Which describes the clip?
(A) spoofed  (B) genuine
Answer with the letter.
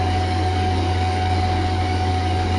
A